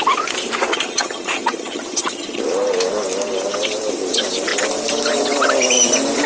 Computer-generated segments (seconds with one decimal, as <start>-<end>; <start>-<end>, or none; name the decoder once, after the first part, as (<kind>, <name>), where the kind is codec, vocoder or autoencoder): 0.7-2.4 (vocoder, HiFi-GAN)